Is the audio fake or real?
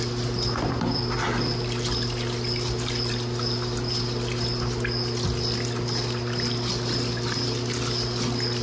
real